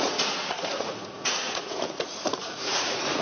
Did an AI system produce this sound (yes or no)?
yes